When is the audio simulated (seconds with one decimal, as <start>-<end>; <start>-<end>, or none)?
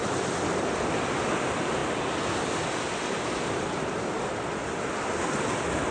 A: none